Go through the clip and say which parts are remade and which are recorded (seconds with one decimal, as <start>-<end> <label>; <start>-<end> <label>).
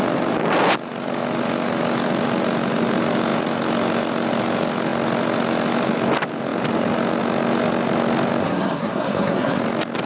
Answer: 0.0-8.4 recorded; 8.4-9.6 remade; 9.6-10.1 recorded